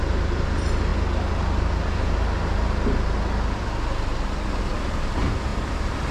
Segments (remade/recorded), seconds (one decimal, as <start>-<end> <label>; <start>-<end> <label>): 0.0-6.1 recorded